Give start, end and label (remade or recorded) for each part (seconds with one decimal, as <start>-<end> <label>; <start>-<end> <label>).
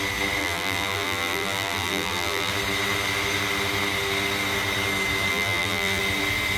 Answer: 0.0-0.4 recorded; 0.4-2.5 remade; 2.5-5.3 recorded; 5.3-6.0 remade; 6.0-6.6 recorded